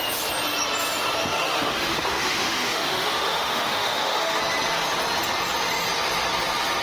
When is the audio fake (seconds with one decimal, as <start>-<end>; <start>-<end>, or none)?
1.3-4.4